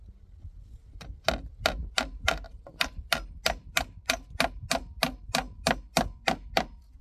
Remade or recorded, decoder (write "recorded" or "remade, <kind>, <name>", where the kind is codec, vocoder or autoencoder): recorded